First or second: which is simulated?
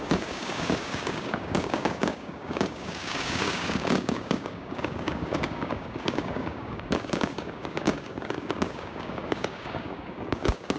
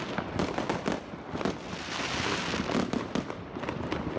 first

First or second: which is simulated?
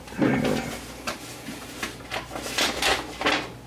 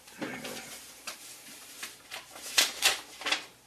second